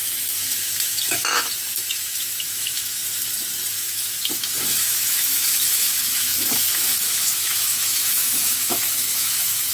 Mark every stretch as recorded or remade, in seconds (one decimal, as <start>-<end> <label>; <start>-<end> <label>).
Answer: 0.0-3.0 remade; 3.0-3.7 recorded; 3.7-9.7 remade